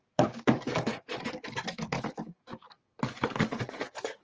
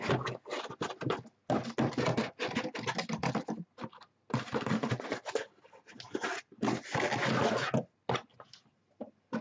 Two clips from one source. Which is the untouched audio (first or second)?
second